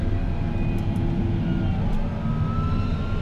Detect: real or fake real